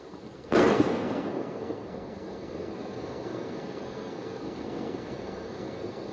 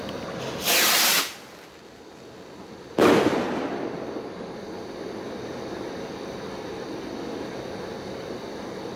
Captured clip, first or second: second